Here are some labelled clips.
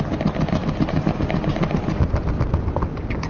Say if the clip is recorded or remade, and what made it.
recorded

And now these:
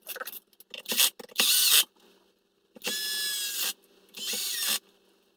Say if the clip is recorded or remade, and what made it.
recorded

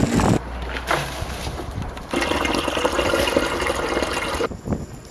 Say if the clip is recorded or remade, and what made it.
recorded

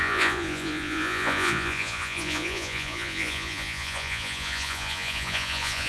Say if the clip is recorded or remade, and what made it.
remade, vocoder, Vocos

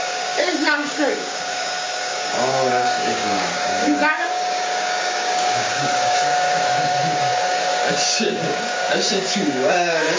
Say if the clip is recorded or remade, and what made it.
remade, codec, DAC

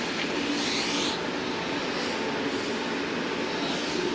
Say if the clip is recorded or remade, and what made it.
recorded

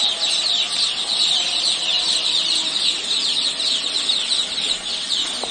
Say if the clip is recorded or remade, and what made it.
recorded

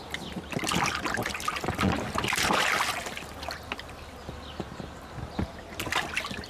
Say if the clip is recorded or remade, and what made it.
recorded